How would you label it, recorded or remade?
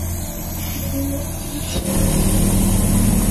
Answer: recorded